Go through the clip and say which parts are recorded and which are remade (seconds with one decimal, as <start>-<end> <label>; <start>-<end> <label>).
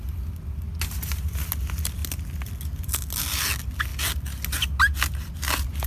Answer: 0.0-5.9 recorded